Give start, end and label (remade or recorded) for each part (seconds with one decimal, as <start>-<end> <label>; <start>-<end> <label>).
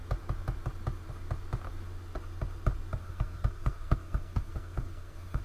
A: 0.0-3.0 recorded; 3.0-5.4 remade